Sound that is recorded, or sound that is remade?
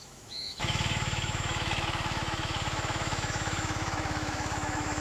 remade